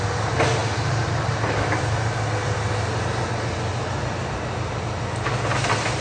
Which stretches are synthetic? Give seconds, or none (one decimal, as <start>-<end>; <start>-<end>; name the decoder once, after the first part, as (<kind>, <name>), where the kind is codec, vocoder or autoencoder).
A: none